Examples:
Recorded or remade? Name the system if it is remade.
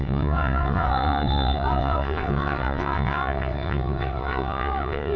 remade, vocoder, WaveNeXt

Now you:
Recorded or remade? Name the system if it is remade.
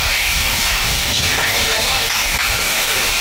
remade, codec, DAC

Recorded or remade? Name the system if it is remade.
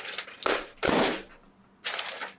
recorded